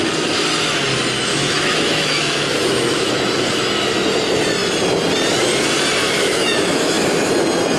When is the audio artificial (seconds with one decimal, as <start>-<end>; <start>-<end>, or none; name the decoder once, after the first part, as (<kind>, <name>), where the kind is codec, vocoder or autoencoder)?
1.3-3.2 (autoencoder, DAC-VAE); 6.0-7.3